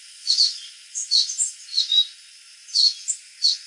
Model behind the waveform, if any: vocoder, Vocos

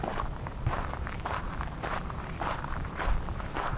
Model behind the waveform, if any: vocoder, BigVGAN v2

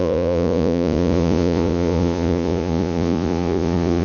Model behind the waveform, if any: vocoder, Vocos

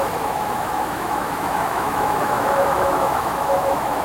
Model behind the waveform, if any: autoencoder, DAC-VAE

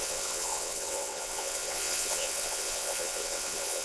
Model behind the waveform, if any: vocoder, WaveNeXt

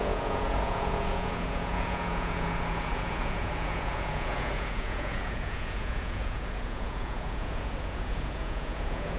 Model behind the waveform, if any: vocoder, Vocos